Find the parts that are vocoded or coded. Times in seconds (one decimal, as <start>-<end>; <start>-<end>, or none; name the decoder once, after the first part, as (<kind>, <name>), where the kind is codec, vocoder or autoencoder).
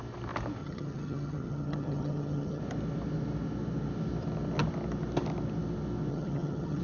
0.6-2.6 (vocoder, HiFi-GAN); 6.1-6.8